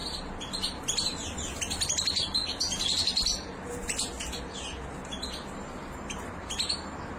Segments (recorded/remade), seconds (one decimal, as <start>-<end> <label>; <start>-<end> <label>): 0.0-7.2 recorded